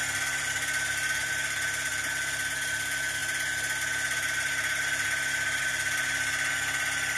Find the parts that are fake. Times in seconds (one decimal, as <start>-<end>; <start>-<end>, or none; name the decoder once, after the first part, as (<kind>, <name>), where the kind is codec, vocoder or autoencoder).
0.0-1.9 (vocoder, BigVGAN v2); 2.5-3.2; 5.6-7.2